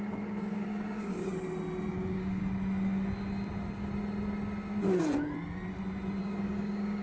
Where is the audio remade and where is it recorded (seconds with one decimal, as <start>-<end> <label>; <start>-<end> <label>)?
0.0-1.3 remade; 1.3-1.9 recorded; 1.9-2.4 remade; 2.4-6.2 recorded; 6.2-7.0 remade